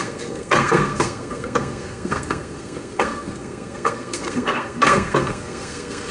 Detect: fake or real fake